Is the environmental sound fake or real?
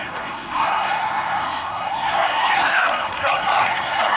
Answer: fake